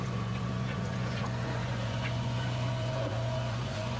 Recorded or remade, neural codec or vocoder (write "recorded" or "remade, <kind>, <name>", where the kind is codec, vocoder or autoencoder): remade, vocoder, Vocos